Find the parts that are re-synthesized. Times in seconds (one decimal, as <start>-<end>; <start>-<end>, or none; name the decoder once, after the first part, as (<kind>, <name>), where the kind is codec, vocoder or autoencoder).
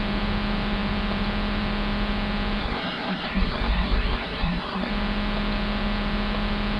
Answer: 2.6-4.9 (codec, SNAC)